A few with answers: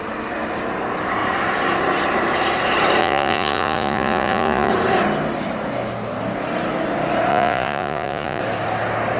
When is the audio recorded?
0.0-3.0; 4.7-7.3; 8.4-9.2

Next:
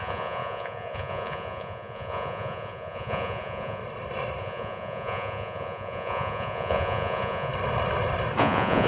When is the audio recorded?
3.8-4.4; 7.5-8.4

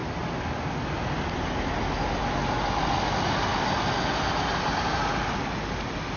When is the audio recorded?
0.0-6.2

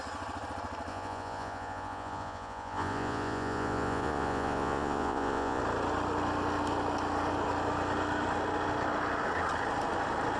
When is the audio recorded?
0.0-0.9; 5.6-10.4

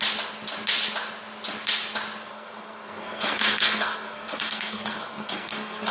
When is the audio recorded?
0.0-2.3